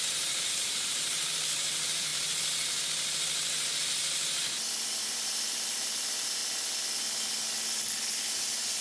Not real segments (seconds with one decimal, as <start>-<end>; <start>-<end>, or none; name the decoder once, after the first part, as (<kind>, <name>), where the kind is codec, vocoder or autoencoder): 0.0-2.1 (vocoder, BigVGAN v2); 5.0-6.4; 8.4-8.8